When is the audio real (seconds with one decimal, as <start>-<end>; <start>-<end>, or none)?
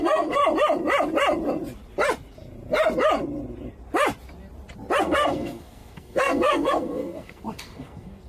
0.4-5.0